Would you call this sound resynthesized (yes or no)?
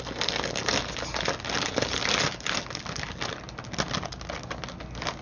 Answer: no